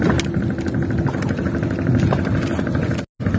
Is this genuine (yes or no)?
yes